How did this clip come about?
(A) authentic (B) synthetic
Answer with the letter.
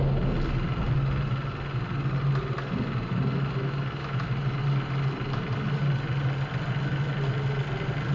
A